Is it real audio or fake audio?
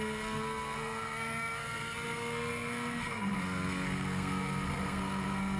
fake